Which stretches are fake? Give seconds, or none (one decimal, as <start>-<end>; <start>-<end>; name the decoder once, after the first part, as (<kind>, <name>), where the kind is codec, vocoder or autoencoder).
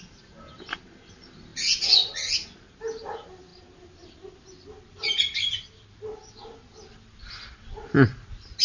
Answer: none